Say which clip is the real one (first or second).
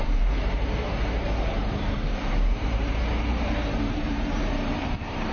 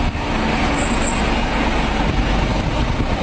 second